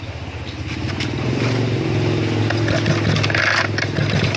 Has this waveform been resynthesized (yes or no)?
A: no